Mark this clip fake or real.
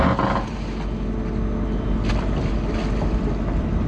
real